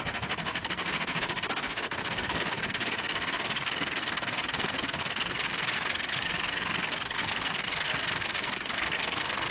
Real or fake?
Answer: fake